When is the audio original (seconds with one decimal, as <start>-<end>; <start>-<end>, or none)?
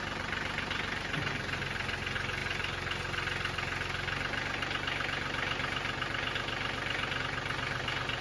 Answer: 0.0-8.2